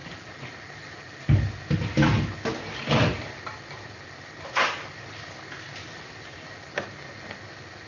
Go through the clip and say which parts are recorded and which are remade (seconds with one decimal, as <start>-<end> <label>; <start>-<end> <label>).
0.0-7.9 recorded